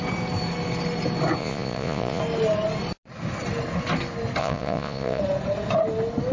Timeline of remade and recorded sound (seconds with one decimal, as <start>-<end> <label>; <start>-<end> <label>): 0.0-1.4 recorded; 1.4-2.2 remade; 2.2-4.4 recorded; 4.4-5.2 remade; 5.2-6.3 recorded